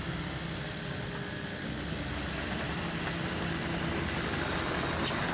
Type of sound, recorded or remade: recorded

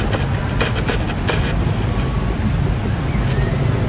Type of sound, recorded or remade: recorded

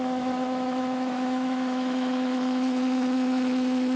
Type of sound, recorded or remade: remade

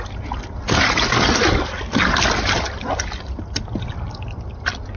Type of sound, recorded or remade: recorded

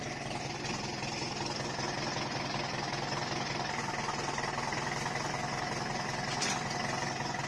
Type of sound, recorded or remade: recorded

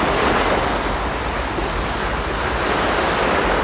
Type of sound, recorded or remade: recorded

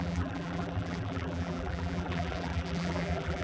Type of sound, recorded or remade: remade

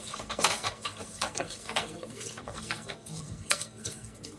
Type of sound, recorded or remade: remade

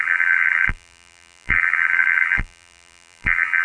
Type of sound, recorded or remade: remade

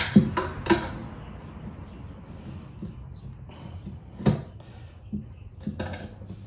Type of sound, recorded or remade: recorded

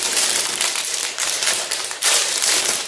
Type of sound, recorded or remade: remade